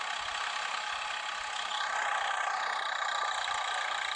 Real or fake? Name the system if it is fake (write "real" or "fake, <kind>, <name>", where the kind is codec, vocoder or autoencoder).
real